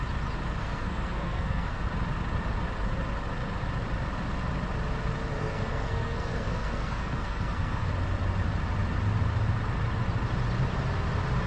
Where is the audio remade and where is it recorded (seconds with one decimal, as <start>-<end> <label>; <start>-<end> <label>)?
0.0-0.6 recorded; 0.6-1.8 remade; 1.8-5.4 recorded; 5.4-7.9 remade; 7.9-11.5 recorded